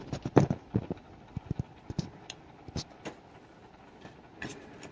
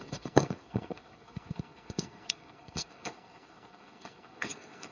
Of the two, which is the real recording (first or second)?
first